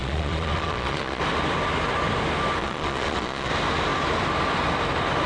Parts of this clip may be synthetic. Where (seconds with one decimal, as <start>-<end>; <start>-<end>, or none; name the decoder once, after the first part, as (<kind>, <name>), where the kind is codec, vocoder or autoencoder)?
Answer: 0.0-1.2 (vocoder, Vocos); 2.6-3.5